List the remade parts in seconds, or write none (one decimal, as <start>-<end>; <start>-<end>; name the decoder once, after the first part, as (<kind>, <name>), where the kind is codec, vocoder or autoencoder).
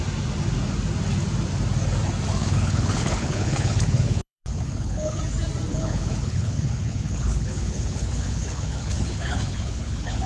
2.4-5.2 (codec, HILCodec); 5.7-10.3